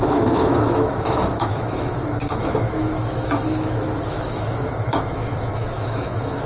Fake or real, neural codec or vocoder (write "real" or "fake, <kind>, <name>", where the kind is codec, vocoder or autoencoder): fake, autoencoder, DAC-VAE